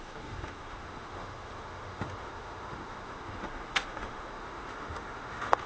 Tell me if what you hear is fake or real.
fake